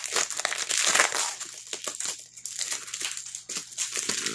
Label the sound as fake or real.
real